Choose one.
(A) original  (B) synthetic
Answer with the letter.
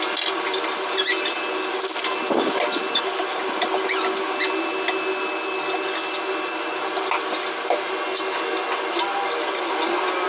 A